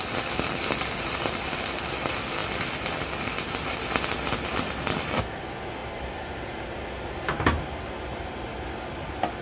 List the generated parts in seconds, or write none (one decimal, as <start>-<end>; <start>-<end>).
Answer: none